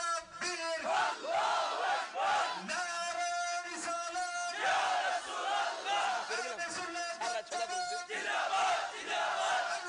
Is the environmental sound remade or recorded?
recorded